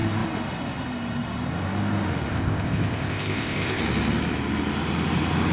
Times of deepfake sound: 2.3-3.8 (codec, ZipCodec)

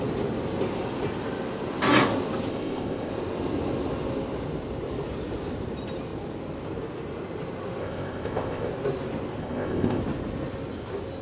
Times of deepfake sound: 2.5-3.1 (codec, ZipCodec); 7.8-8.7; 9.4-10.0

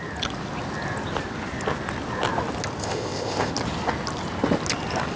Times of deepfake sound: 2.8-3.5 (codec, ZipCodec)